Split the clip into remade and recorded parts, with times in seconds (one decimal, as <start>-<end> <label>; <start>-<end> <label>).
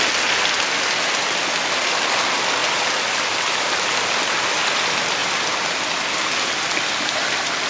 0.0-7.7 recorded